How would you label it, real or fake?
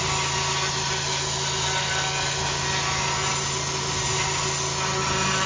real